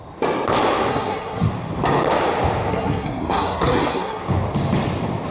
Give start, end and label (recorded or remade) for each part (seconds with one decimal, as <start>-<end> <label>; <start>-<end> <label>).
0.0-0.9 recorded; 0.9-1.5 remade; 1.5-2.7 recorded; 2.7-4.2 remade; 4.2-5.3 recorded

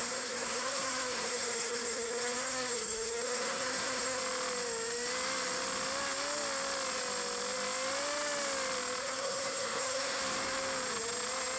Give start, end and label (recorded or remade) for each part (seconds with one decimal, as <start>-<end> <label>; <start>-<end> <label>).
0.0-4.2 remade; 4.2-9.0 recorded; 9.0-10.2 remade; 10.2-11.6 recorded

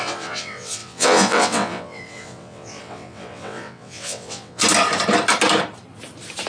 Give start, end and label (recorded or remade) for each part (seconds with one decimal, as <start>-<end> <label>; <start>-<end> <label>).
0.0-4.6 remade; 4.6-6.5 recorded

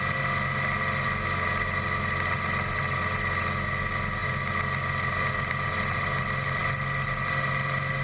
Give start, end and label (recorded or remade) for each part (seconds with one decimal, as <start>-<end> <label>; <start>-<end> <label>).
0.0-8.0 recorded

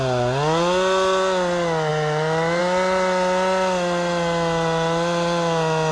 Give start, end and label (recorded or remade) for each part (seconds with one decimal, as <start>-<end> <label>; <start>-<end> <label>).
0.0-5.9 recorded

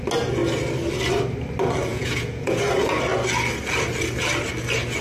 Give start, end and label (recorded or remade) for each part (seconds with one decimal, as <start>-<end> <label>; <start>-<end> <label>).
0.0-1.9 recorded; 1.9-2.6 remade; 2.6-5.0 recorded

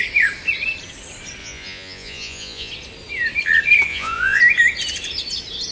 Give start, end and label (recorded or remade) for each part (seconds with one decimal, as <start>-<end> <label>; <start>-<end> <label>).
0.0-1.4 recorded; 1.4-2.7 remade; 2.7-3.9 recorded; 3.9-4.4 remade; 4.4-5.7 recorded

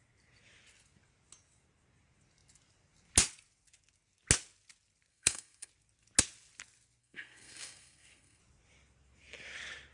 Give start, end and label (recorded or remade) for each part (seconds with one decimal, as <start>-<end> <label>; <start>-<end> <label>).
0.0-5.1 recorded; 5.1-5.7 remade; 5.7-7.0 recorded; 7.0-8.4 remade; 8.4-9.9 recorded